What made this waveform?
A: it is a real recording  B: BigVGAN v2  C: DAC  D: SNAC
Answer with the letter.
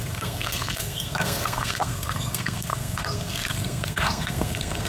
D